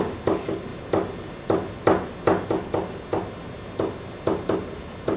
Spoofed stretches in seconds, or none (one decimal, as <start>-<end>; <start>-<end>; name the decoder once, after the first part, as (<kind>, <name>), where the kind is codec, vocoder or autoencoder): none